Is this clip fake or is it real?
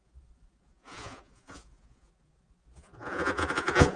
fake